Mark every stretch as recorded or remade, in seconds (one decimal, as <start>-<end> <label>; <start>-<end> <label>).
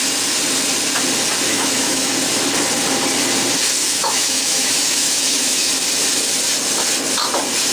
0.0-1.5 recorded; 1.5-2.1 remade; 2.1-3.8 recorded; 3.8-5.7 remade; 5.7-7.7 recorded